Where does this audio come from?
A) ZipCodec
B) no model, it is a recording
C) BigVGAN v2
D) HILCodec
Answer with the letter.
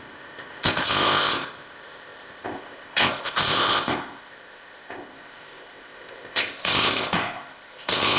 A